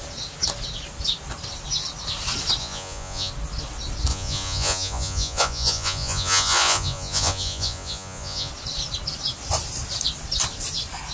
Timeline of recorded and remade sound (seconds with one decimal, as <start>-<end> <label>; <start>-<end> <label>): 0.0-2.6 recorded; 2.6-3.3 remade; 3.3-4.1 recorded; 4.1-8.5 remade; 8.5-11.1 recorded